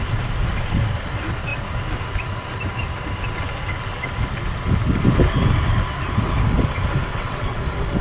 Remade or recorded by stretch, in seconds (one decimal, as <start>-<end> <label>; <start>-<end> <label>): 0.0-7.1 recorded; 7.1-7.6 remade; 7.6-8.0 recorded